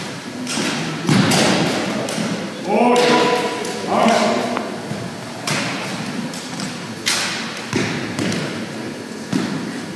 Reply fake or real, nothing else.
real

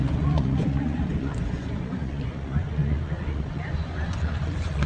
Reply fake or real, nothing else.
fake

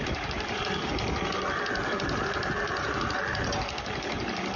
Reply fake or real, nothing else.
real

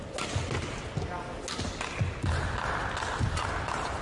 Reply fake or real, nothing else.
real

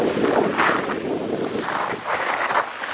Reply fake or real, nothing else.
real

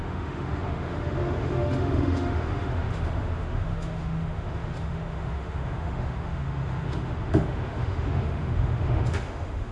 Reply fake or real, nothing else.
fake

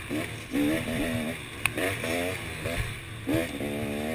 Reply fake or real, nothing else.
real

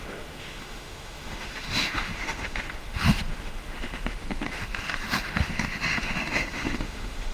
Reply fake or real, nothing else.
fake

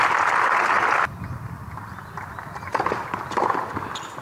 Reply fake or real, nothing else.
real